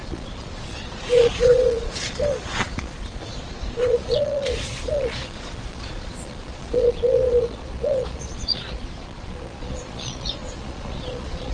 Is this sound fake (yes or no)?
yes